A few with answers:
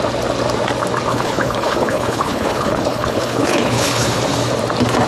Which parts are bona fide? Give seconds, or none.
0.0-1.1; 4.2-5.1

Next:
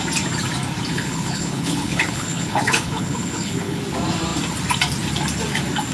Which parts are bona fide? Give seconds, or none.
0.0-0.9; 3.8-5.9

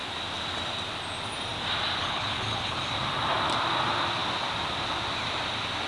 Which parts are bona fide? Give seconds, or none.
0.0-2.0; 2.9-5.9